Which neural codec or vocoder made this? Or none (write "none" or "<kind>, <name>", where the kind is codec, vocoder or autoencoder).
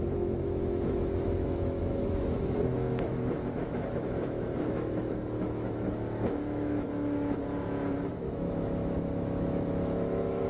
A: autoencoder, DAC-VAE